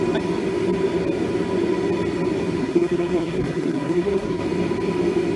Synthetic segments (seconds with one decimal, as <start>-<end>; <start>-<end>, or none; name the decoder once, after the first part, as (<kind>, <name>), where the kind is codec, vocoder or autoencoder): 2.6-4.4 (codec, SNAC)